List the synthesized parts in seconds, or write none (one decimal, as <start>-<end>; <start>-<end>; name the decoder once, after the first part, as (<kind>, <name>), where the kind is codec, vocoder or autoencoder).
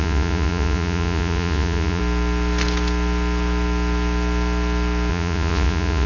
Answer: 0.0-2.0 (vocoder, Vocos); 5.1-6.1